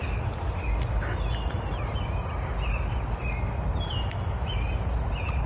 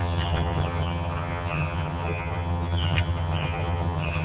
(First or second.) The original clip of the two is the first